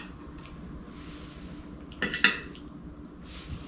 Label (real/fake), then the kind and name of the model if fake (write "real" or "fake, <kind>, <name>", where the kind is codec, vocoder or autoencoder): real